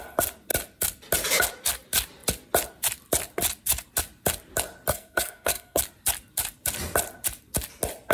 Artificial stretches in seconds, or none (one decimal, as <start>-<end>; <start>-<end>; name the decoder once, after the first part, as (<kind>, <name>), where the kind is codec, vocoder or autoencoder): 4.9-5.8 (codec, SNAC)